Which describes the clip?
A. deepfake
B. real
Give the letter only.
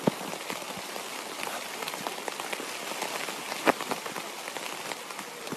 B